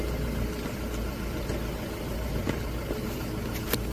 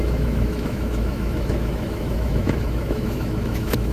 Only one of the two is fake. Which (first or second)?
second